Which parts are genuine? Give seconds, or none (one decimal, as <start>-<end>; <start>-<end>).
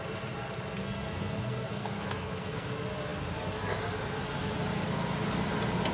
0.0-0.8; 2.7-5.9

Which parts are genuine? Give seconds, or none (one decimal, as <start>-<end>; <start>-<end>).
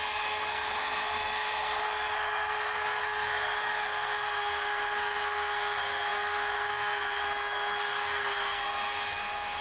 none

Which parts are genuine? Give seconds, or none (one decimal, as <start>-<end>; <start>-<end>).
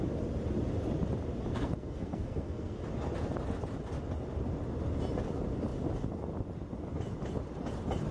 0.0-1.5; 2.8-8.1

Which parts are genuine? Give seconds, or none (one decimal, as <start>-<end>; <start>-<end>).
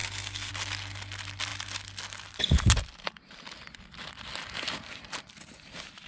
0.5-6.1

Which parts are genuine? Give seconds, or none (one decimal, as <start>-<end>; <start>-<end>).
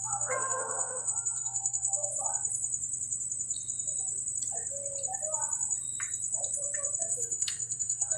2.1-7.0